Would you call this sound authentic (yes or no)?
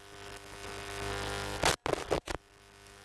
yes